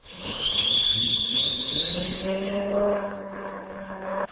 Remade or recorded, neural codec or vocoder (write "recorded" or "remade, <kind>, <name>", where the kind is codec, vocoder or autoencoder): remade, codec, HILCodec